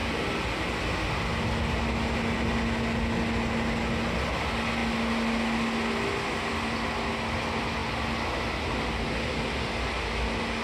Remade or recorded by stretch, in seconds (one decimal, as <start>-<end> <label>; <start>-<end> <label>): 0.0-10.6 recorded